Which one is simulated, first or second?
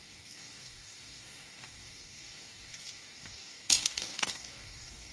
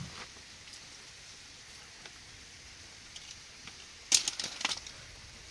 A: first